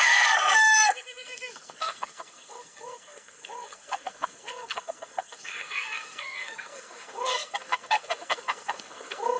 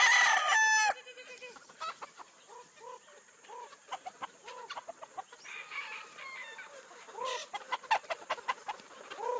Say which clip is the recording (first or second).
second